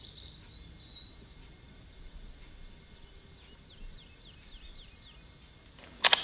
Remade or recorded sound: recorded